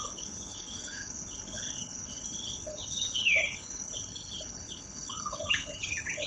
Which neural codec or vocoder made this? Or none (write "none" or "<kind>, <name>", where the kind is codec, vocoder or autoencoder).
codec, HILCodec